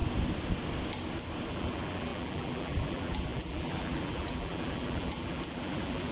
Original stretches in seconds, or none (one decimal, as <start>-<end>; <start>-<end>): 0.0-1.5